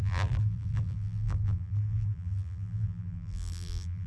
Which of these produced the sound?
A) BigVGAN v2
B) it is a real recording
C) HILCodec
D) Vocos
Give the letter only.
A